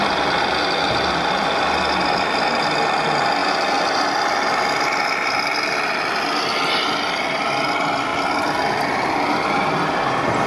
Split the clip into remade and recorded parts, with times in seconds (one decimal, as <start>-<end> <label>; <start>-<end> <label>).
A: 0.0-10.5 recorded